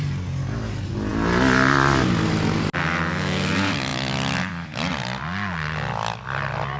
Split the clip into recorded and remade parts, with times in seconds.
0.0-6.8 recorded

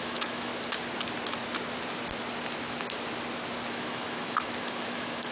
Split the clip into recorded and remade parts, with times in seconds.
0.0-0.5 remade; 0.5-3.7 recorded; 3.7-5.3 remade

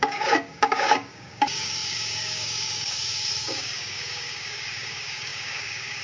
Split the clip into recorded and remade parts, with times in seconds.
0.0-6.0 remade

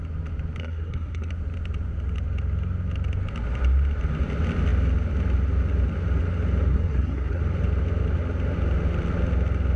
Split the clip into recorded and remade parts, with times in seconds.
0.0-0.6 recorded; 0.6-1.3 remade; 1.3-6.7 recorded; 6.7-7.4 remade; 7.4-9.8 recorded

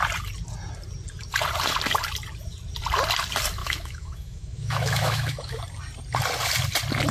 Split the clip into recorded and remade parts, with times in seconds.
0.0-3.6 recorded; 3.6-5.6 remade; 5.6-7.1 recorded

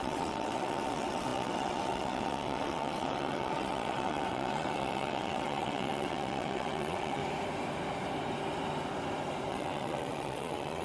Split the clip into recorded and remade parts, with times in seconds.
0.0-7.2 remade; 7.2-9.5 recorded; 9.5-10.8 remade